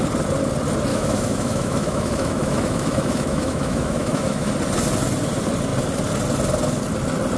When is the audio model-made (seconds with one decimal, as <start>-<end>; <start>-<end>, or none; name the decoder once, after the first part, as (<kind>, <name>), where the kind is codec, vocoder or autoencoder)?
0.9-4.5 (autoencoder, DAC-VAE)